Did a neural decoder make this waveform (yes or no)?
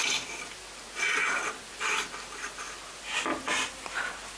no